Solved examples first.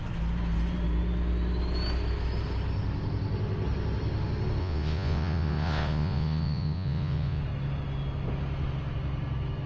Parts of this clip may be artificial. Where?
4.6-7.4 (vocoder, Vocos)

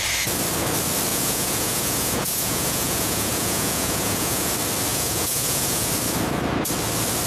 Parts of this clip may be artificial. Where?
1.1-4.5 (vocoder, Vocos); 4.9-5.9